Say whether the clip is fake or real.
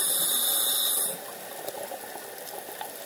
real